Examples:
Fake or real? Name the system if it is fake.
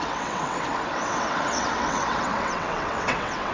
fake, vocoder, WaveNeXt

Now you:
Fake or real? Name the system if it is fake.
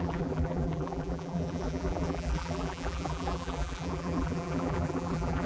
fake, vocoder, BigVGAN v2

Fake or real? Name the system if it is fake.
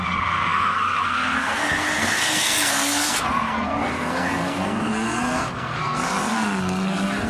fake, codec, SNAC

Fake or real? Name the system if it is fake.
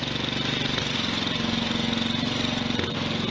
real